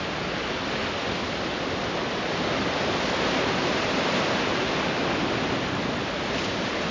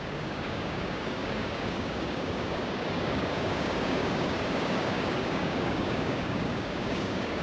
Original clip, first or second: first